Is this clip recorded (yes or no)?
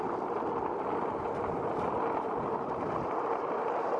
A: yes